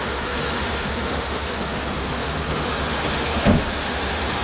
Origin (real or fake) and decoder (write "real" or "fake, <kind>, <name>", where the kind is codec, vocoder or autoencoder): fake, autoencoder, DAC-VAE